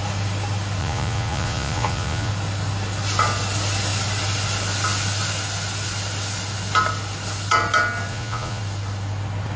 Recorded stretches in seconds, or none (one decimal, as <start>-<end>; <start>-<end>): 0.0-0.8; 2.3-8.1; 8.6-9.6